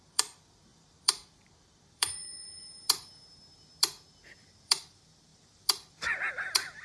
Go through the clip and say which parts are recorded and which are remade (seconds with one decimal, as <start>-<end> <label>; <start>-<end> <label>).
0.0-6.8 remade